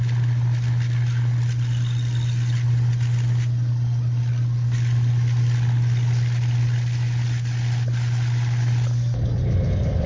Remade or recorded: recorded